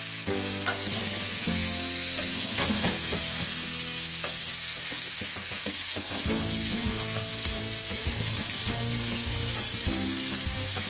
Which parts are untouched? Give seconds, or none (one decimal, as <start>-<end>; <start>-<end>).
none